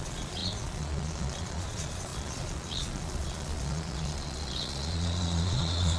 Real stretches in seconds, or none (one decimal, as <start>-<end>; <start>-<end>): none